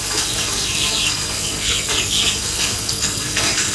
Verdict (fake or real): fake